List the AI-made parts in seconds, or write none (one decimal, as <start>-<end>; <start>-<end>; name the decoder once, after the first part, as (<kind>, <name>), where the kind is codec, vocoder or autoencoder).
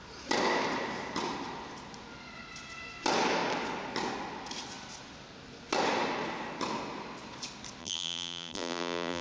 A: 7.8-9.2 (vocoder, BigVGAN v2)